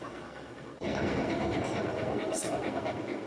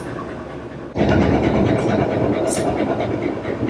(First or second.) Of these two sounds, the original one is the second